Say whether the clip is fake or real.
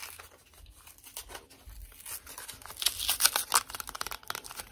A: real